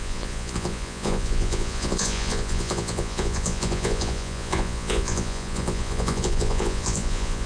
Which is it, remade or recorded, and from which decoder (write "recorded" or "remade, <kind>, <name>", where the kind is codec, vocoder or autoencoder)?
remade, vocoder, Vocos